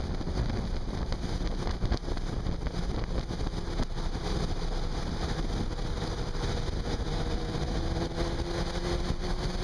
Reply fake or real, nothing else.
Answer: real